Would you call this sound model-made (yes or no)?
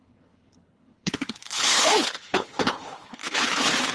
yes